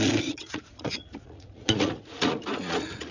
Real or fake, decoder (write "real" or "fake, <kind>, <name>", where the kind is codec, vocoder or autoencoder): fake, vocoder, Vocos